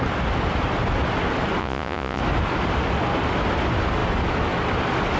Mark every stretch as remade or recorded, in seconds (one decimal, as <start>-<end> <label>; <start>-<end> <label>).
0.0-1.6 recorded; 1.6-2.2 remade; 2.2-5.2 recorded